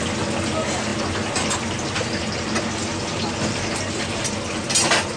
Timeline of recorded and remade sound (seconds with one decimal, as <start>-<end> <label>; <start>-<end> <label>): 0.0-5.2 recorded